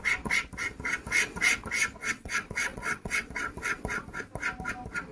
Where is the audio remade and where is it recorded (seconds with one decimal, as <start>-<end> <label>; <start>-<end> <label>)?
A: 0.0-2.0 recorded; 2.0-3.3 remade; 3.3-5.1 recorded